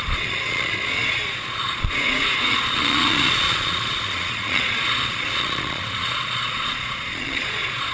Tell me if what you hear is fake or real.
fake